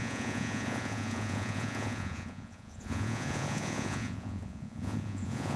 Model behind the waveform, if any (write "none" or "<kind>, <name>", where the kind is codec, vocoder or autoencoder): vocoder, Vocos